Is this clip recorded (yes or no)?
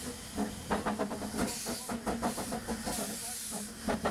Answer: yes